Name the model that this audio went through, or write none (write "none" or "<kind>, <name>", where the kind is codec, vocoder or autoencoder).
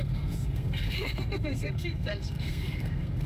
codec, SNAC